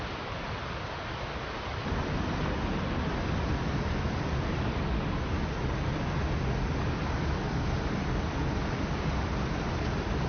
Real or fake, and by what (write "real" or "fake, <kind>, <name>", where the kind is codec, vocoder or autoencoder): real